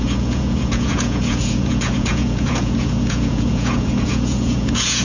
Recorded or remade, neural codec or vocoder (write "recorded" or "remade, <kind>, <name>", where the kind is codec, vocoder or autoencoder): remade, vocoder, Vocos